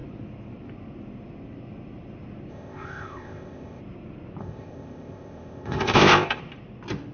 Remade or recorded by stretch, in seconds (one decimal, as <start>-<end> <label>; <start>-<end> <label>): 0.0-2.5 recorded; 2.5-3.8 remade; 3.8-4.4 recorded; 4.4-6.4 remade; 6.4-7.1 recorded